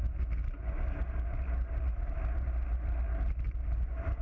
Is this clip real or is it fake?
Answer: real